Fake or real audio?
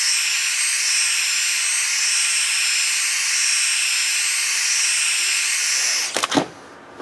real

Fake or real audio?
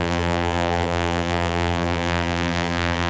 fake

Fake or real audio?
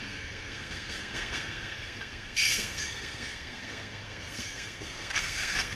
fake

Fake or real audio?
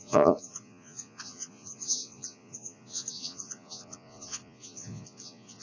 fake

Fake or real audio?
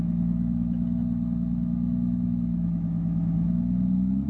fake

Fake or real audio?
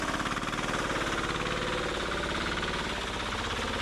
real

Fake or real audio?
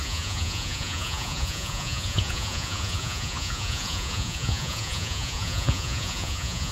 fake